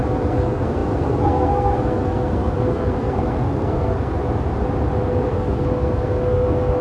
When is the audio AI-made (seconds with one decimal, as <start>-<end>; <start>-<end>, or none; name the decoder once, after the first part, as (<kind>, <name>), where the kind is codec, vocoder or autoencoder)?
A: 0.0-4.2 (codec, SNAC); 5.1-6.8